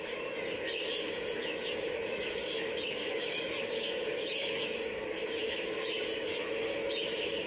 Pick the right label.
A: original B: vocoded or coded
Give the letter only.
B